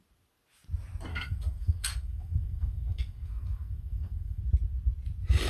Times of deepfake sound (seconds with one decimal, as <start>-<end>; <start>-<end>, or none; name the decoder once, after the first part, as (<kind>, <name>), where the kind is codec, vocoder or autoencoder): 1.1-4.4 (codec, SNAC)